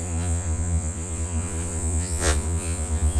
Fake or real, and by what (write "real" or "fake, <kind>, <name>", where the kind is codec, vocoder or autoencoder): fake, vocoder, Vocos